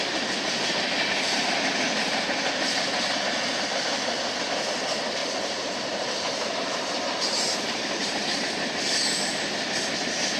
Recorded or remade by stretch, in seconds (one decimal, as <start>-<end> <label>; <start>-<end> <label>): 0.0-5.2 recorded; 5.2-8.2 remade; 8.2-10.4 recorded